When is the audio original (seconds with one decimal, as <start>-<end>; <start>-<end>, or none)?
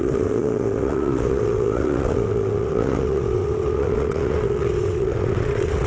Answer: none